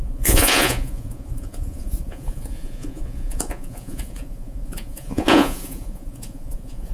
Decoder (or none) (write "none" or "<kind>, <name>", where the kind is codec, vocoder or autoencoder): vocoder, Vocos